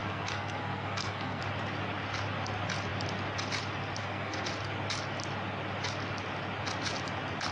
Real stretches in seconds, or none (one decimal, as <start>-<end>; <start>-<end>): 1.4-4.0; 4.5-7.5